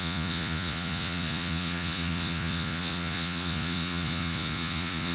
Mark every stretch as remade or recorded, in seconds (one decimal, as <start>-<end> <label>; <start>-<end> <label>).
0.0-5.1 remade